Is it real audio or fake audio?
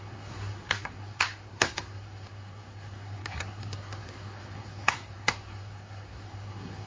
fake